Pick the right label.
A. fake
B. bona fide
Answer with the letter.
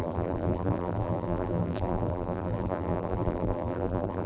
A